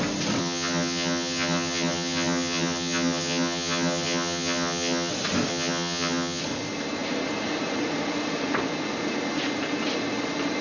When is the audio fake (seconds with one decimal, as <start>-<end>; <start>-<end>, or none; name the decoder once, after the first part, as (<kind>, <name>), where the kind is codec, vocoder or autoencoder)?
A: 0.4-5.1 (vocoder, HiFi-GAN); 5.5-6.4